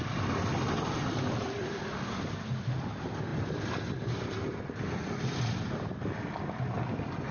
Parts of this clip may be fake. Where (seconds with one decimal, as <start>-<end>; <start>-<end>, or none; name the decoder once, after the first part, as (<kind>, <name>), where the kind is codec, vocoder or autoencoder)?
none